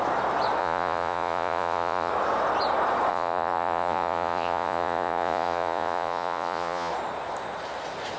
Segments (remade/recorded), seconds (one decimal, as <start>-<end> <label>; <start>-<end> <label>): 0.0-0.6 recorded; 0.6-2.1 remade; 2.1-3.1 recorded; 3.1-6.9 remade; 6.9-8.2 recorded